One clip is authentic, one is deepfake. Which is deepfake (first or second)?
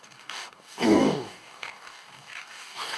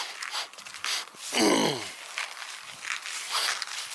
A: first